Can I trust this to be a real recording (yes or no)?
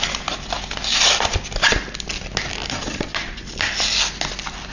yes